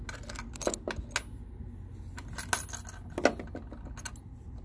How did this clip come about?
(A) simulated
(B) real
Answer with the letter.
B